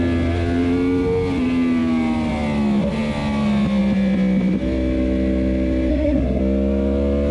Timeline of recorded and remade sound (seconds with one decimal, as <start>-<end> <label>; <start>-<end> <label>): 0.0-5.9 recorded; 5.9-6.4 remade; 6.4-7.3 recorded